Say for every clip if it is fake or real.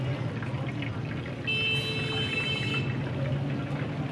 real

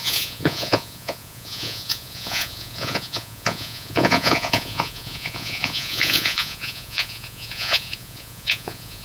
fake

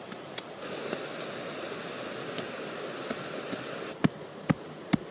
real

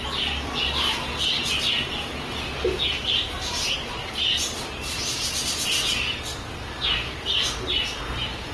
real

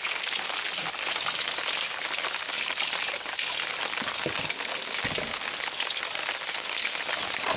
real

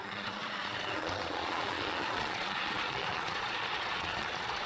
fake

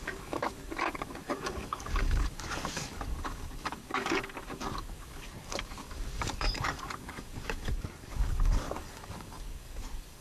fake